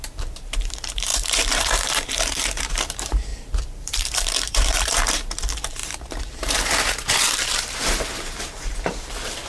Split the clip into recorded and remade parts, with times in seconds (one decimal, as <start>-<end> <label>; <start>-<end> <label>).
0.0-9.5 remade

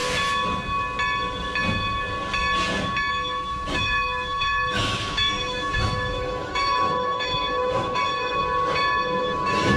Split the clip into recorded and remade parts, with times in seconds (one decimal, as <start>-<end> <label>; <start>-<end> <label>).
0.0-3.1 recorded; 3.1-8.4 remade; 8.4-9.2 recorded; 9.2-9.8 remade

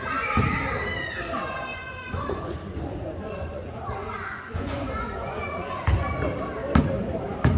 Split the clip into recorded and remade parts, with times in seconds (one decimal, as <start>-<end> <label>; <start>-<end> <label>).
0.0-1.7 recorded; 1.7-5.8 remade; 5.8-7.6 recorded

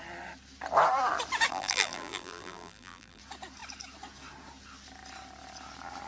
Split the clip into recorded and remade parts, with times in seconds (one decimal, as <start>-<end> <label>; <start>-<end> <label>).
0.0-1.5 recorded; 1.5-3.2 remade; 3.2-6.1 recorded

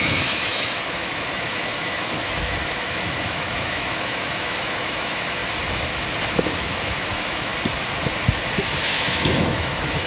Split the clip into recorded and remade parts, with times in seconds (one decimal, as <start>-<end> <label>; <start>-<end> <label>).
0.0-5.4 remade; 5.4-6.3 recorded; 6.3-7.5 remade; 7.5-8.8 recorded; 8.8-10.1 remade

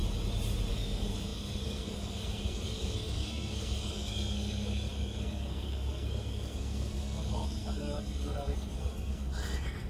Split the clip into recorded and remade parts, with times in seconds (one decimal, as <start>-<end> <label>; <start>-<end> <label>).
0.0-0.7 recorded; 0.7-9.9 remade

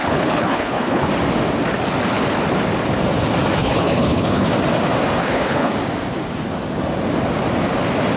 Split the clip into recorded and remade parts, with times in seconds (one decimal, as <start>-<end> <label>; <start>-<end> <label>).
0.0-1.1 remade; 1.1-3.6 recorded; 3.6-4.5 remade; 4.5-5.2 recorded; 5.2-5.7 remade; 5.7-8.2 recorded

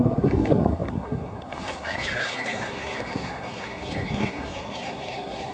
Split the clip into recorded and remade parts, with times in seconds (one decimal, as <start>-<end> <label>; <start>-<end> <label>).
0.0-5.5 remade